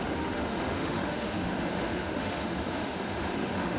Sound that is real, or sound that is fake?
fake